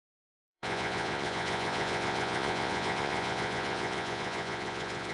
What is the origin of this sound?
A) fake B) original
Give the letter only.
A